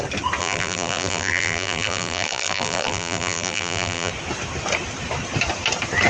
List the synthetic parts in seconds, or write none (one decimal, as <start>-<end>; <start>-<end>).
0.4-4.1